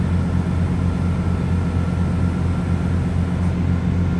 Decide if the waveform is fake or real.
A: real